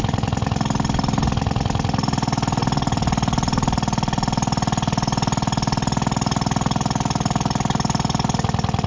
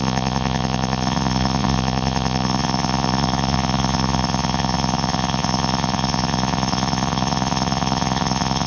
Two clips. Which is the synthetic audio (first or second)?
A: second